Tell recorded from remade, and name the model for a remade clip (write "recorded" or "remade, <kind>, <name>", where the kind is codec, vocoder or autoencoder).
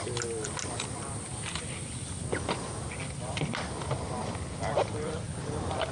recorded